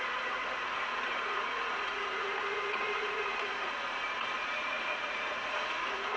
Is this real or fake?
fake